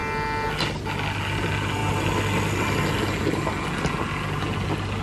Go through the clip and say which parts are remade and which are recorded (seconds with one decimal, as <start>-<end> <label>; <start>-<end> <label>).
0.0-5.0 recorded